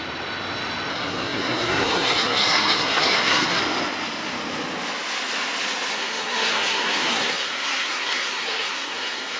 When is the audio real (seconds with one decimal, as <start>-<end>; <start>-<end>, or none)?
0.0-0.9; 3.6-5.9